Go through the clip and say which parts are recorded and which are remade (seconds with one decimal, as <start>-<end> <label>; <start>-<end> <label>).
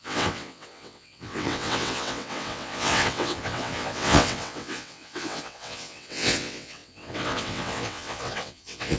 0.0-9.0 remade